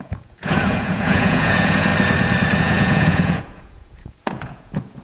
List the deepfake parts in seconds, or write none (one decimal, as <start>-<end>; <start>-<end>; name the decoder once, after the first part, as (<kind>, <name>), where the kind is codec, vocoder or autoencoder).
0.0-1.9 (vocoder, Vocos); 2.6-5.0